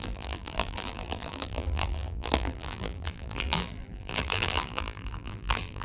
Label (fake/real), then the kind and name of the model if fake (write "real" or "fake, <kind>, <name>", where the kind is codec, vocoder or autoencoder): fake, vocoder, BigVGAN v2